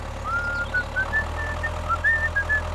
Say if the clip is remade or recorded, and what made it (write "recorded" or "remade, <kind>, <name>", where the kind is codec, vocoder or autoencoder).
recorded